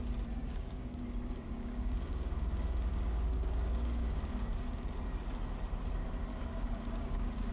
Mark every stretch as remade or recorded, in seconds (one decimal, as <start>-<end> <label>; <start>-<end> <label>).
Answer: 0.0-0.4 recorded; 0.4-4.9 remade; 4.9-6.3 recorded; 6.3-7.5 remade